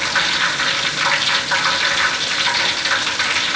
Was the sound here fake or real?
real